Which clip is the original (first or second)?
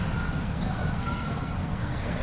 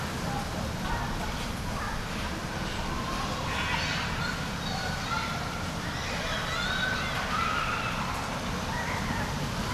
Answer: second